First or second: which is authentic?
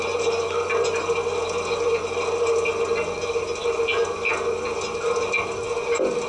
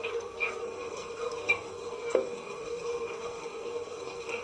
first